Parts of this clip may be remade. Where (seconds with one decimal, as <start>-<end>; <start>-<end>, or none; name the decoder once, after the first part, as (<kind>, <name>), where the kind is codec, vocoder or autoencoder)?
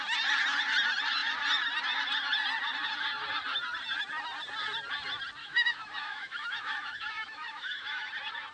5.4-8.1 (autoencoder, DAC-VAE)